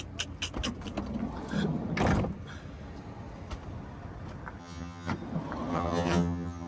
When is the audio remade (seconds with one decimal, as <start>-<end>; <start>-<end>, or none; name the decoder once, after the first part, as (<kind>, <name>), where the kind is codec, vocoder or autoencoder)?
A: 4.6-5.1 (vocoder, HiFi-GAN); 5.7-6.7